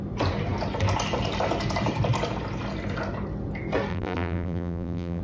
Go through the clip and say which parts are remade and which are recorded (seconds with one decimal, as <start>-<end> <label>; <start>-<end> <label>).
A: 0.0-3.9 recorded; 3.9-5.2 remade

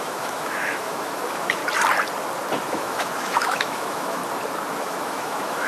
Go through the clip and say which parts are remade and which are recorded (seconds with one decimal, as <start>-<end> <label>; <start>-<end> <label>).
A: 0.0-1.6 remade; 1.6-2.7 recorded; 2.7-4.2 remade; 4.2-4.8 recorded; 4.8-5.7 remade